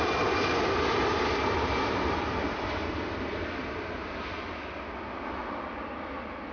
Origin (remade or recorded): recorded